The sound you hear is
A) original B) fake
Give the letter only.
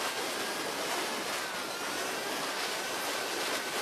A